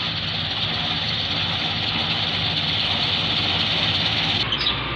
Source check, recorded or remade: recorded